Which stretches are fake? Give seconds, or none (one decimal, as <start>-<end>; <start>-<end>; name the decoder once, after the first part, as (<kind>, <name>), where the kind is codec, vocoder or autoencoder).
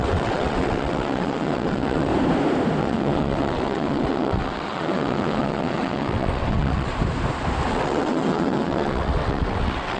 0.0-2.1 (vocoder, WaveNeXt); 2.8-6.9; 7.7-10.0